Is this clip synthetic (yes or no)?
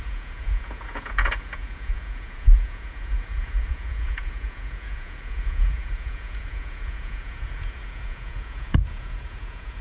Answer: yes